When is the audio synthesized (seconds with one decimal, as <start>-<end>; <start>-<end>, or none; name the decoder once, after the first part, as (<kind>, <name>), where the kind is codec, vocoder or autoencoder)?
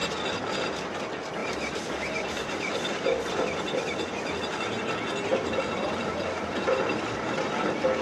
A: 1.4-4.4 (vocoder, BigVGAN v2); 5.3-6.9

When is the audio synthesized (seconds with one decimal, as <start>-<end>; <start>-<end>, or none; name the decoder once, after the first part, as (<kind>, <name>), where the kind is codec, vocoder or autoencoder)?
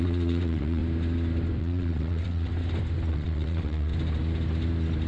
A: 0.0-0.8 (vocoder, WaveNeXt); 1.6-2.5; 3.1-3.9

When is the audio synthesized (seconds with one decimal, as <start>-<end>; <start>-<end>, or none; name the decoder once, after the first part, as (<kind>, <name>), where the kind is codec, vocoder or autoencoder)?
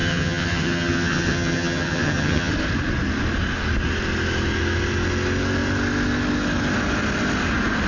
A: 0.0-2.5 (vocoder, HiFi-GAN)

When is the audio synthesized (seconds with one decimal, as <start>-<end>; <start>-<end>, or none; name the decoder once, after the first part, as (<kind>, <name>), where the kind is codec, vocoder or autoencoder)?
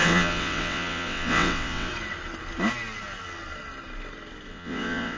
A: 0.0-1.9 (vocoder, WaveNeXt); 4.5-5.2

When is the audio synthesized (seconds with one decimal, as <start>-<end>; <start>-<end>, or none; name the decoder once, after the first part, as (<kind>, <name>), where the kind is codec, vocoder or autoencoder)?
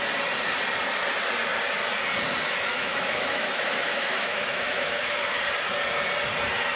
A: 2.7-5.4 (autoencoder, DAC-VAE)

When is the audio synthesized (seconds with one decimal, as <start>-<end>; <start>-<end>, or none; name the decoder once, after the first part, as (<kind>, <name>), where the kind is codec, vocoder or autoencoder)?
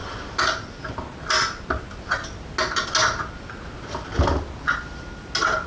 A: none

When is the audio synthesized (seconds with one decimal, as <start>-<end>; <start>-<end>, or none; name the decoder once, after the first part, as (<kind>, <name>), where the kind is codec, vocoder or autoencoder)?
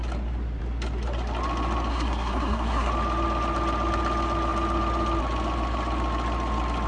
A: 1.9-2.9 (codec, SNAC)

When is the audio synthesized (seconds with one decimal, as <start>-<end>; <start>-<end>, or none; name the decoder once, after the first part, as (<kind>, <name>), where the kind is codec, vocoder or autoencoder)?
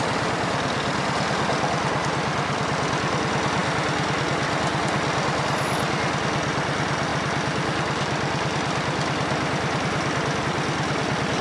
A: none